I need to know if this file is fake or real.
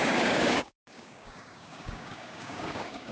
fake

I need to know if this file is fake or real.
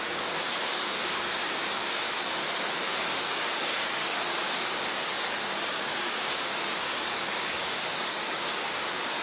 fake